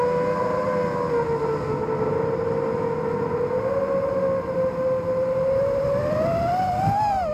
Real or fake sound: real